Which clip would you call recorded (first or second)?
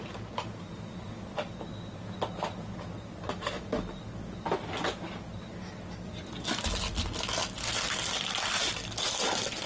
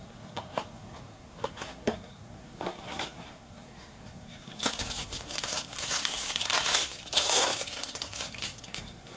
first